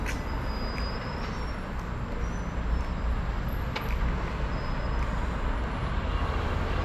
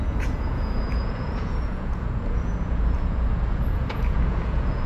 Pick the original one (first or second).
first